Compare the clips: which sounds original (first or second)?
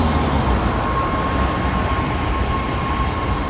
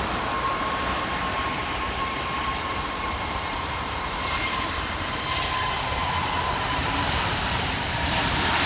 first